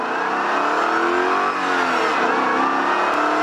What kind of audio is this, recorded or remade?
recorded